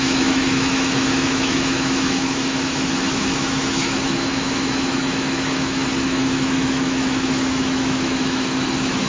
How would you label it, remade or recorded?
remade